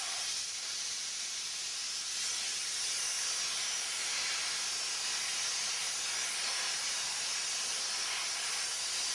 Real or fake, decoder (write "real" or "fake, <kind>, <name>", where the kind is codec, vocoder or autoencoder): real